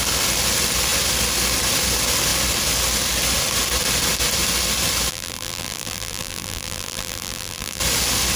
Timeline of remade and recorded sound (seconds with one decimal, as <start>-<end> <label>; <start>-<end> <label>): 0.0-5.1 recorded; 5.1-7.8 remade; 7.8-8.4 recorded